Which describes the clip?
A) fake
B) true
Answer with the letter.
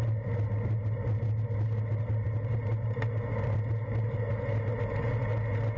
B